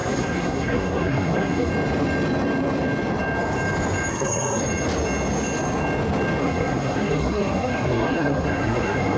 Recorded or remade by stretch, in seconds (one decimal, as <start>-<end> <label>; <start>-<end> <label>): 0.0-1.7 remade; 1.7-4.1 recorded; 4.1-4.6 remade; 4.6-6.4 recorded; 6.4-9.2 remade